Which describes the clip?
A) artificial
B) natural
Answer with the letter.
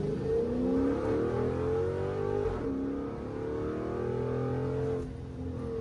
B